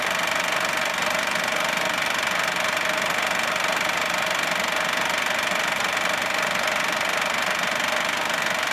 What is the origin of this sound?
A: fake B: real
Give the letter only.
B